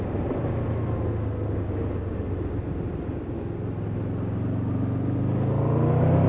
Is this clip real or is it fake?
real